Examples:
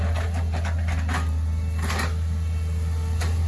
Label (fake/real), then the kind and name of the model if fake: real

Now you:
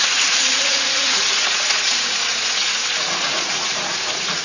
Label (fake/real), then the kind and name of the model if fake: fake, vocoder, Vocos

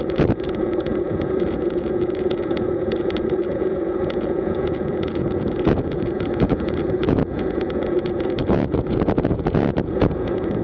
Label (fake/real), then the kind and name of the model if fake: fake, vocoder, Vocos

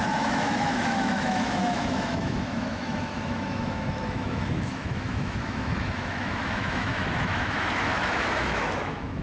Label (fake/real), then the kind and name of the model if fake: fake, autoencoder, DAC-VAE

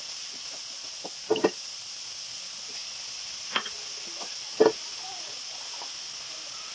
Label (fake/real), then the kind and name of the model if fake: real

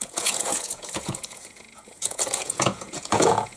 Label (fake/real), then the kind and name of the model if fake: fake, vocoder, Vocos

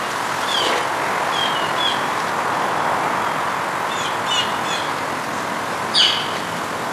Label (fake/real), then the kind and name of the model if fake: real